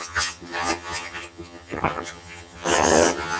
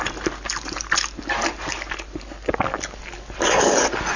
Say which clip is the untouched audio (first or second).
second